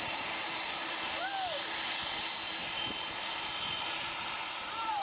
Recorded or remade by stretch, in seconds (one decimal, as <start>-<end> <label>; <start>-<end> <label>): 0.0-1.3 remade; 1.3-2.7 recorded; 2.7-5.0 remade